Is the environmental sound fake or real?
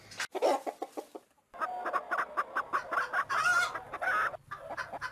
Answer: real